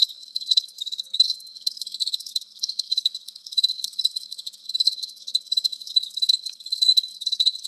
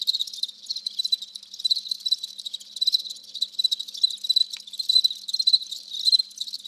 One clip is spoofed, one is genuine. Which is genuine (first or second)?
second